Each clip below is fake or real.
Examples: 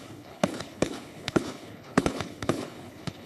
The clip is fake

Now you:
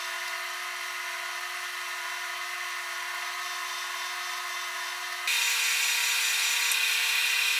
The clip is real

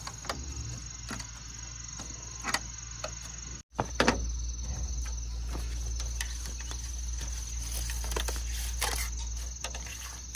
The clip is real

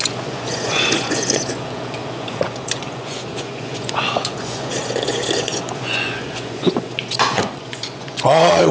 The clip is fake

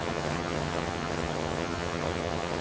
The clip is fake